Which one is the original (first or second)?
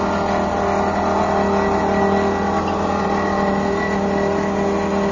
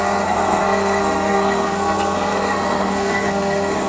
first